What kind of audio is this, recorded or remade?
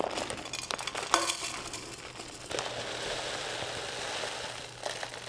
recorded